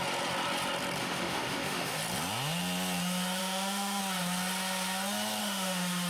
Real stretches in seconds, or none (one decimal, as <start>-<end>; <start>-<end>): 0.0-1.0; 2.0-3.4; 4.0-5.4